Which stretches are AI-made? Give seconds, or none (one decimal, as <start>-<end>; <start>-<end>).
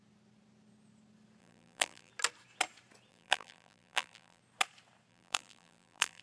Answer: 1.4-2.1; 3.1-4.4; 5.1-6.2